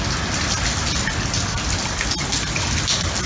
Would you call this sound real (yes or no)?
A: yes